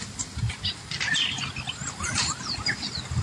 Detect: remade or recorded recorded